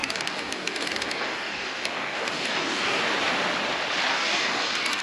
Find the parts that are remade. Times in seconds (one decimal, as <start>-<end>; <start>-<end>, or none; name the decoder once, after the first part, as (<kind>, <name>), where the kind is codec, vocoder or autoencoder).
0.0-3.0 (codec, DAC); 4.1-5.0